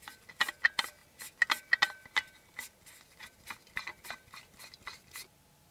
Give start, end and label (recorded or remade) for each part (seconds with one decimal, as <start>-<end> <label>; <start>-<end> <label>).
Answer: 0.0-5.7 recorded